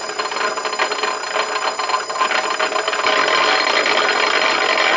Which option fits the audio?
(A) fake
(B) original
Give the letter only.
B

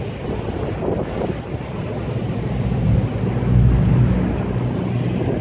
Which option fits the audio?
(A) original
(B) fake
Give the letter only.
A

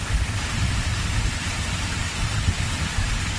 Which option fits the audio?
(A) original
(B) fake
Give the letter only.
A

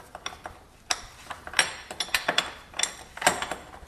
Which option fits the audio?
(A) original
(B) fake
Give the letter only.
A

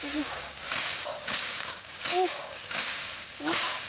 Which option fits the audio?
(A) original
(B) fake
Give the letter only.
B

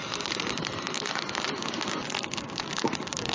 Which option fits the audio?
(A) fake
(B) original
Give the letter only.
B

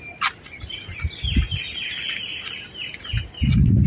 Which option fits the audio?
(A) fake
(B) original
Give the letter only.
B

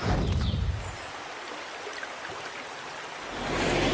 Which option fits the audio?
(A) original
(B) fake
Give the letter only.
A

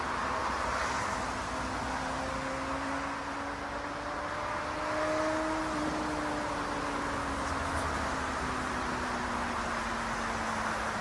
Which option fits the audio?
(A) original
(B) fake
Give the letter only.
A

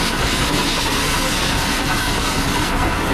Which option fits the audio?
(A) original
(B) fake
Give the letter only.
B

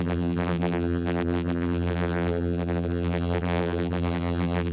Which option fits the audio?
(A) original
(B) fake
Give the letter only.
B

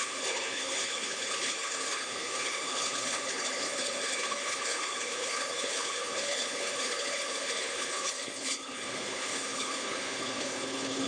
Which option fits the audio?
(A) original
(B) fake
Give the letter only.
B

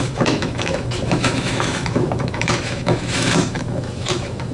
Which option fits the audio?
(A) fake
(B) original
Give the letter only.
A